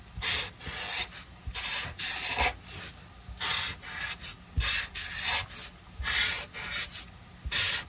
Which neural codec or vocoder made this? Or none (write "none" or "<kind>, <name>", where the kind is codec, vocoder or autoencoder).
none